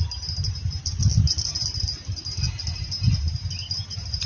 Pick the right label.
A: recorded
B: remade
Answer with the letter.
A